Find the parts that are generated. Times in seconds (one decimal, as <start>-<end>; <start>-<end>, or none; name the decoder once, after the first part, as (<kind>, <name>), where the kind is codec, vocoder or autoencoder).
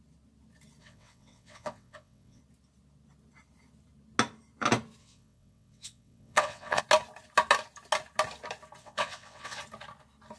0.8-2.4 (vocoder, WaveNeXt); 5.0-6.8; 8.8-9.6